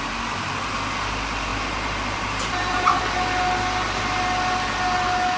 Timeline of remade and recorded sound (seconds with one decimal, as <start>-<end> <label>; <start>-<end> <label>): 0.0-1.5 recorded; 1.5-3.0 remade; 3.0-5.4 recorded